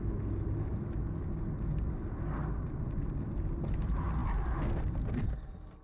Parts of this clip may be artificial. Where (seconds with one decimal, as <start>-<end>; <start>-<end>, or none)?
none

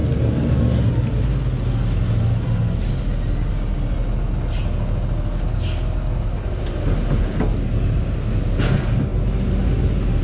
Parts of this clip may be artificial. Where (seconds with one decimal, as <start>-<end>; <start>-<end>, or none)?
none

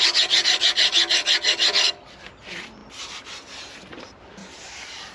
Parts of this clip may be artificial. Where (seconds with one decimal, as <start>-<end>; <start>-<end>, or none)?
4.4-5.1

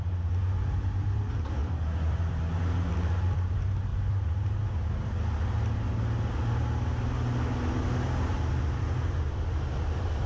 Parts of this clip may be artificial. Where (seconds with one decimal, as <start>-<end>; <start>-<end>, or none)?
none

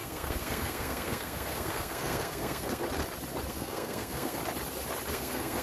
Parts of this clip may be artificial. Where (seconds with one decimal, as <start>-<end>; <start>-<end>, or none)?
0.0-2.8; 3.5-4.4; 5.1-5.6